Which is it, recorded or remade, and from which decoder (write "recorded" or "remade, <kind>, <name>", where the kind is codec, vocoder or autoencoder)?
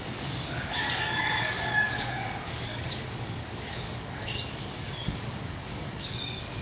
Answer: remade, codec, DAC